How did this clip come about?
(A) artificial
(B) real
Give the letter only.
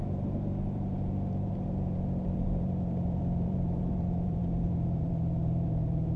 A